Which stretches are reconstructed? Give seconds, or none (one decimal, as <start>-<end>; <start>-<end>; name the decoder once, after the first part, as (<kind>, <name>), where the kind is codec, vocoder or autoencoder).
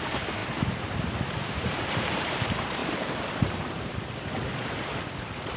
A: 0.0-5.6 (vocoder, BigVGAN v2)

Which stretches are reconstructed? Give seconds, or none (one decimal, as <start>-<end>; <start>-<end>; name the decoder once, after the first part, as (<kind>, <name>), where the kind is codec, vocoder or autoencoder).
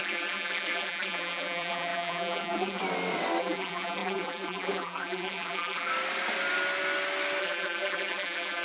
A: 0.0-2.8 (vocoder, BigVGAN v2); 3.4-5.9; 7.4-8.6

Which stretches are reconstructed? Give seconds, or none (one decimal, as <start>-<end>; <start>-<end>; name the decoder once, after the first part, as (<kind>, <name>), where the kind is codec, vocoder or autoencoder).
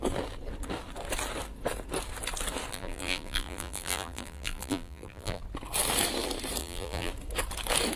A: 2.7-5.4 (vocoder, BigVGAN v2); 6.6-7.1